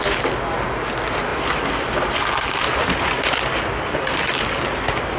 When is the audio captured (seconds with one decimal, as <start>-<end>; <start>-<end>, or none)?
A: 0.0-5.2